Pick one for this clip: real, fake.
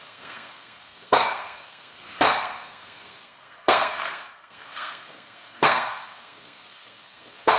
fake